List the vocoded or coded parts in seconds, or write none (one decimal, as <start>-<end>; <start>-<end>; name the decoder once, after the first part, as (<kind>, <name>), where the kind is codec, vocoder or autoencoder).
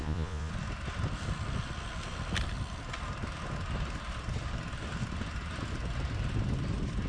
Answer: 0.0-0.5 (vocoder, Vocos)